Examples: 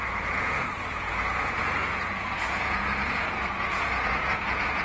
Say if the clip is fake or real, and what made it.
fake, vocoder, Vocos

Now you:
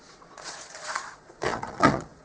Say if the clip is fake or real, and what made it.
fake, vocoder, Vocos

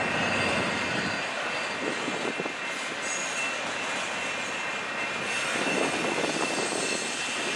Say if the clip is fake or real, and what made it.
real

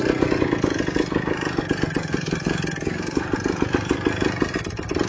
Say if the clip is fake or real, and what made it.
real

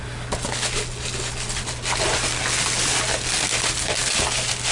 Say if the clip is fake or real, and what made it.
real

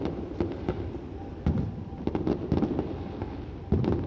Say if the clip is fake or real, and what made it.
real